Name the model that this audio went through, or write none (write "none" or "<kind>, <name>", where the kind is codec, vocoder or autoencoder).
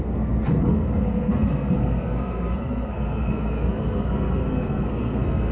codec, SNAC